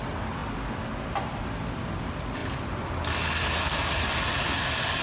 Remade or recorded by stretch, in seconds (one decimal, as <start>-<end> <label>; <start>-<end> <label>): 0.0-5.0 recorded